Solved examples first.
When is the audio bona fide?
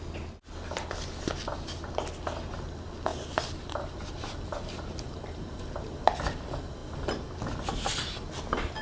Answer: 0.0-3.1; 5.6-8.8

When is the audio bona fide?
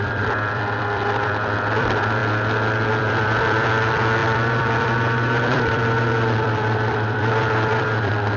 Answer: 2.2-2.9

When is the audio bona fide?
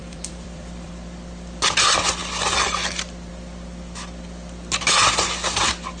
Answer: 0.9-6.0